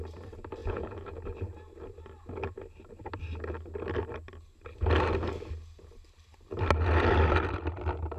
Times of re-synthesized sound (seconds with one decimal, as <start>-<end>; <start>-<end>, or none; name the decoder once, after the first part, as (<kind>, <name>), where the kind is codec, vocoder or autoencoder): 0.6-1.2 (vocoder, Vocos)